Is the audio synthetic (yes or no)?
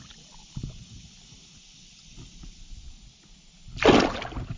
no